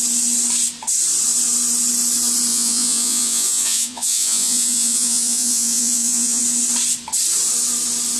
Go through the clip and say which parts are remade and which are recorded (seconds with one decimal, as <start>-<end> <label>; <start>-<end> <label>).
0.0-2.5 recorded; 2.5-6.4 remade; 6.4-8.2 recorded